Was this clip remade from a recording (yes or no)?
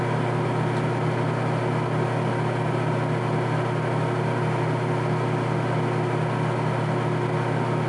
no